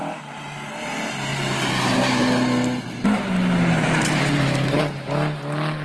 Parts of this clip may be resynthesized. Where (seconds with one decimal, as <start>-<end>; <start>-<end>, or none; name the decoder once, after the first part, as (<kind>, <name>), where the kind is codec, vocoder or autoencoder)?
none